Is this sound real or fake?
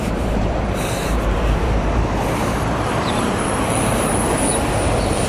fake